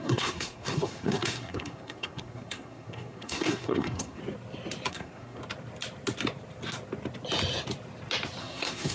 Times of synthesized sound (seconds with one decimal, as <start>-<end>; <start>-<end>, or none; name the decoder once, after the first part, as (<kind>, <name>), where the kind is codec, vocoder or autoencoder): 0.0-4.2 (codec, SNAC); 4.9-5.4; 8.4-8.9